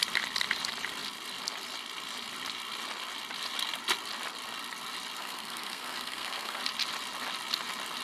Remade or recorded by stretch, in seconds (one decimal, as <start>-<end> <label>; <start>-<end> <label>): 0.0-5.2 recorded; 5.2-6.6 remade; 6.6-8.0 recorded